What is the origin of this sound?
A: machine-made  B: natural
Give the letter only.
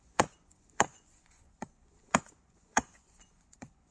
A